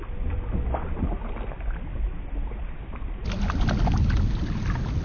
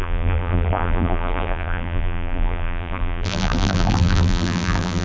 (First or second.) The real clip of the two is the first